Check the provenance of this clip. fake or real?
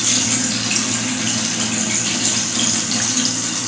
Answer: real